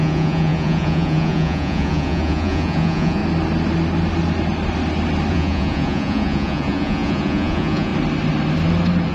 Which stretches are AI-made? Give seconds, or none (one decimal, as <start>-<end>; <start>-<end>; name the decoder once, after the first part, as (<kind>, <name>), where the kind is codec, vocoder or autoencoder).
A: 0.0-3.2 (vocoder, Vocos); 5.3-7.9